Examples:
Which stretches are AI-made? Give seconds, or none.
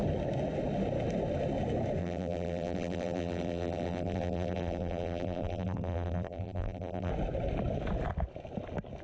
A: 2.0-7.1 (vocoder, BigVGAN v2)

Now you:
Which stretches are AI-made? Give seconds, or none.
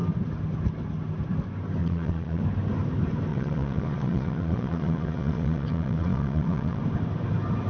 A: 1.8-2.4 (vocoder, Vocos); 3.3-6.8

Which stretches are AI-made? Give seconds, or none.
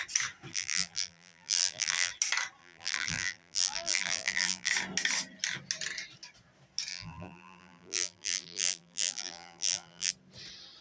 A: 0.5-2.1 (vocoder, BigVGAN v2); 2.6-4.7; 6.9-10.1